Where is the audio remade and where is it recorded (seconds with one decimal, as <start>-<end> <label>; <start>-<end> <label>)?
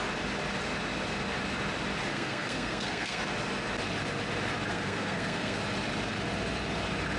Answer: 0.0-2.1 recorded; 2.1-3.2 remade; 3.2-4.7 recorded; 4.7-5.6 remade; 5.6-7.2 recorded